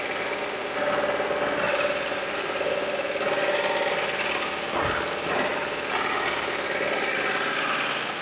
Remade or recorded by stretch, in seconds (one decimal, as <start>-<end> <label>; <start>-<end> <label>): 0.0-8.2 recorded